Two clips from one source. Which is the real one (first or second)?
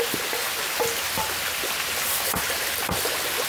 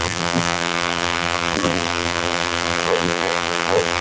first